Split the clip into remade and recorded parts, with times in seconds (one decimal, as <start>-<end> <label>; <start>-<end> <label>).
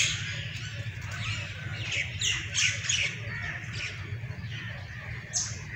0.0-5.8 recorded